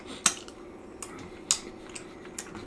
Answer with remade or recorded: recorded